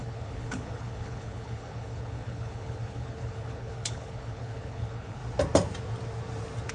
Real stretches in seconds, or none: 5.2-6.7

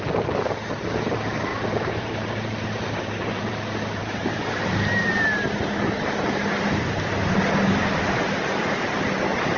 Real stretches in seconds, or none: 0.0-1.5; 3.5-4.0; 5.1-7.8; 9.1-9.6

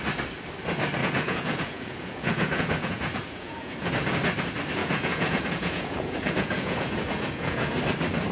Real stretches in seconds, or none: 0.0-1.0; 3.9-4.8; 7.7-8.3

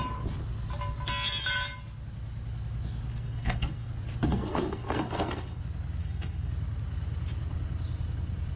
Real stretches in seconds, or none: 0.0-3.1; 3.9-4.3; 5.6-6.0; 6.5-8.6